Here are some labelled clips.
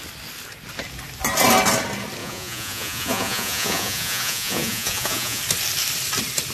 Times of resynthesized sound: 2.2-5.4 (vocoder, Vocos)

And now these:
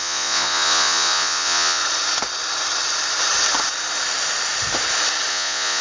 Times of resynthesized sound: 0.0-1.8 (vocoder, Vocos); 5.3-5.8

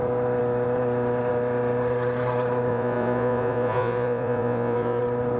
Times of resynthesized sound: 2.7-5.0 (vocoder, Vocos)

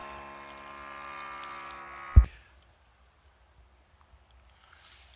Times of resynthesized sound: none

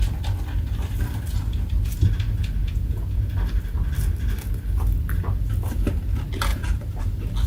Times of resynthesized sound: 2.6-3.3 (vocoder, Vocos)

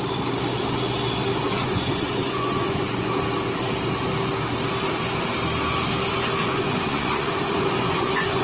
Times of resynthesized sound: 1.4-3.2 (vocoder, Vocos); 6.4-8.4